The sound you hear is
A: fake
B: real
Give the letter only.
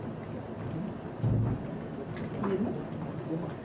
B